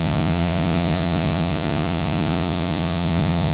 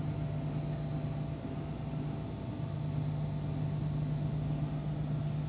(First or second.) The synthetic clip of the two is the first